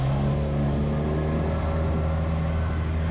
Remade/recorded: recorded